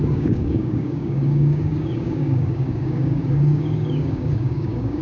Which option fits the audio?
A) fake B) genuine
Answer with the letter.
A